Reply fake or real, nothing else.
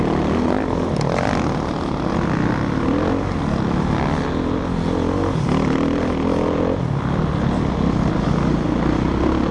real